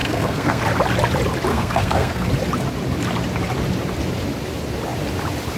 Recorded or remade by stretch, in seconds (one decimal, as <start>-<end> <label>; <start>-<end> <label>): 0.0-0.6 remade; 0.6-1.5 recorded; 1.5-2.3 remade; 2.3-5.6 recorded